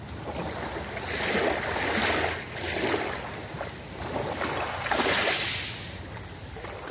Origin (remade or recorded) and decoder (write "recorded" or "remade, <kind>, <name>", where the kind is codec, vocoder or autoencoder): recorded